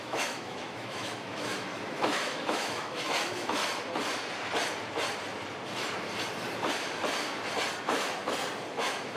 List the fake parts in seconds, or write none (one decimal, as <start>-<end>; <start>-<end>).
0.0-3.6; 7.8-8.2; 8.7-9.2